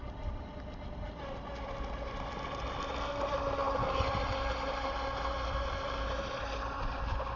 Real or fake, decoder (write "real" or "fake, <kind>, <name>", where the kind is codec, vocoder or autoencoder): real